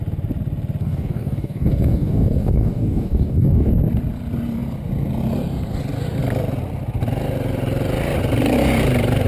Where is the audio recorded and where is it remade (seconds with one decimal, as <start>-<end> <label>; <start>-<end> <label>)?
0.0-0.8 recorded; 0.8-3.7 remade; 3.7-9.3 recorded